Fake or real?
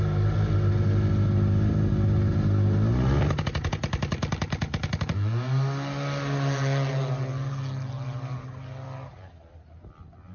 real